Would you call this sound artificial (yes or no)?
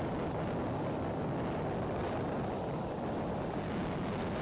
no